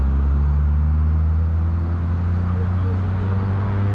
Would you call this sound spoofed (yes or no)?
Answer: no